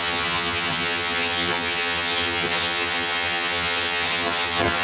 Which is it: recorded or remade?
remade